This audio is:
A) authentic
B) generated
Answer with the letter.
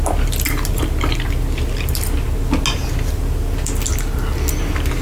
A